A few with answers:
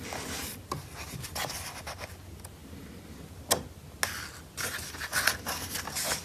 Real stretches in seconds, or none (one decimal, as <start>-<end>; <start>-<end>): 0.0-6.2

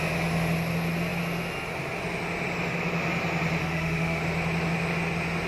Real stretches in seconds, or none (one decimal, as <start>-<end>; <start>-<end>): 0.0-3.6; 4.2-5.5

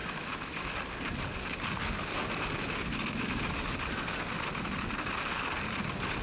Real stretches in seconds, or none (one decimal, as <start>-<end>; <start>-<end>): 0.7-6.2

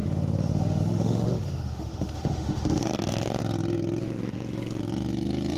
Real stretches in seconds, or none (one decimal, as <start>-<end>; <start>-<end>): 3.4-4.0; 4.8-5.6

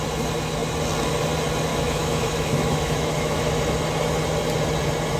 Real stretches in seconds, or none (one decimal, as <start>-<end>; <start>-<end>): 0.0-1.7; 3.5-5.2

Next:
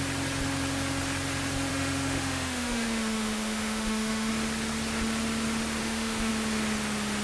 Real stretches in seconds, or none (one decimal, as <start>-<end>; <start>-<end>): 0.0-1.7; 4.3-5.8; 6.3-7.2

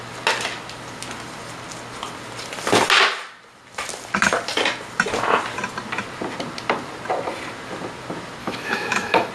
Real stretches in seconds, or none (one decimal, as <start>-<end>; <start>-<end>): 0.0-8.4